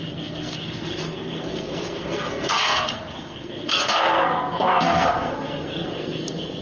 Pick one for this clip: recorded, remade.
remade